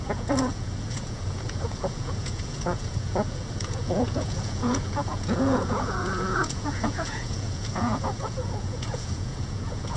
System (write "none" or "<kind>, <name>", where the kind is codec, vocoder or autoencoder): vocoder, Vocos